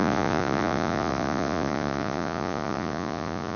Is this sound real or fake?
fake